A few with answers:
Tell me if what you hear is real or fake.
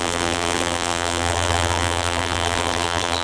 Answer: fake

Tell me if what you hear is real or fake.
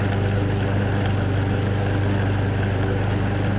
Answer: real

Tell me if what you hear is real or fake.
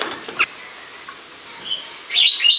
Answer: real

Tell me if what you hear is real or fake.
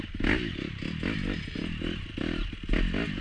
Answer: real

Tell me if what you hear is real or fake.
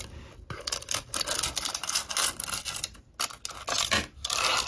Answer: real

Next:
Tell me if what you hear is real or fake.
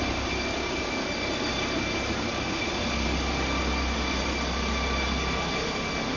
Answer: real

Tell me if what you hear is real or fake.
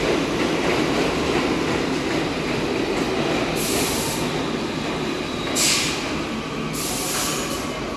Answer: real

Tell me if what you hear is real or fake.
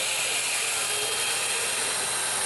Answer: real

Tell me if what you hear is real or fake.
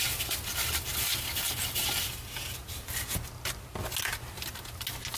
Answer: real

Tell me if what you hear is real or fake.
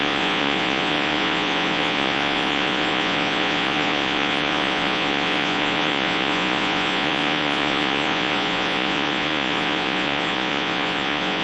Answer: fake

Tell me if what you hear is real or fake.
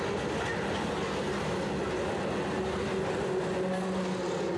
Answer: real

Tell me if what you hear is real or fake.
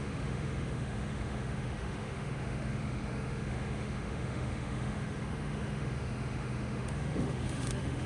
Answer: fake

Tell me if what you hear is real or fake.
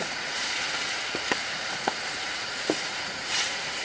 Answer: fake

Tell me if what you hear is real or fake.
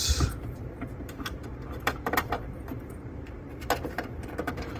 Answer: fake